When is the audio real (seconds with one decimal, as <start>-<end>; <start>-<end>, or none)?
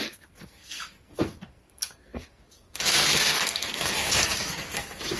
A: none